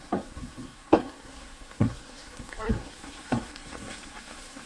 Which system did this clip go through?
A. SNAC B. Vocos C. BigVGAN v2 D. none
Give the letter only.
A